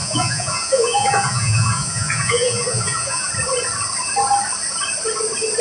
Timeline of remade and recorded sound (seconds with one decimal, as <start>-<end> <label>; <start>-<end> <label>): 0.0-3.3 remade; 3.3-5.6 recorded